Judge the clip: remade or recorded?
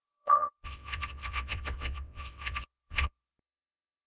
remade